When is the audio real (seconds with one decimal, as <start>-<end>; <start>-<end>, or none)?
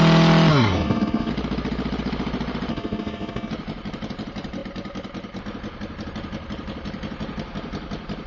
0.0-0.5; 1.3-2.7; 3.5-8.3